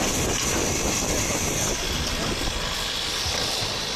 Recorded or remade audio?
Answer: remade